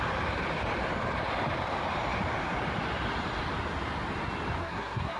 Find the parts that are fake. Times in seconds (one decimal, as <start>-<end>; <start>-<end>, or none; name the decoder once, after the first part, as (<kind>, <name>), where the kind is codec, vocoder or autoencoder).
4.6-5.2 (codec, SNAC)